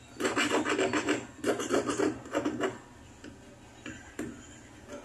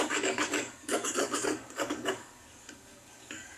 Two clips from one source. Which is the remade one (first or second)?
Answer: second